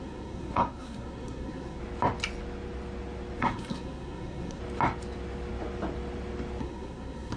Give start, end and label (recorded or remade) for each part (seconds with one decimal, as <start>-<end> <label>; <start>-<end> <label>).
0.0-1.8 remade; 1.8-3.4 recorded; 3.4-4.6 remade; 4.6-6.6 recorded; 6.6-7.4 remade